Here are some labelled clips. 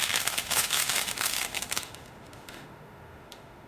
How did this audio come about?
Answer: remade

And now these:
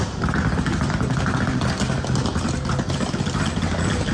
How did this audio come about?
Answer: recorded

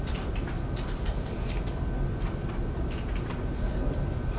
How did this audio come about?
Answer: recorded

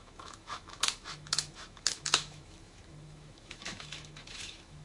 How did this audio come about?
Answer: remade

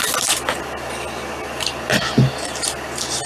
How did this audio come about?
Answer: recorded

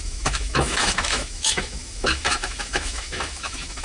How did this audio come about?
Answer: remade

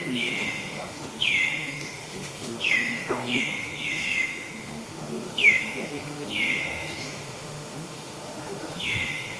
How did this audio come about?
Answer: remade